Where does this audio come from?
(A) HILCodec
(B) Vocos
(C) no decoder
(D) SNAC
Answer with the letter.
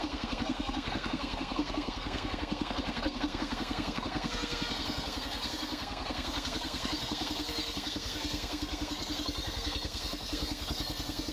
D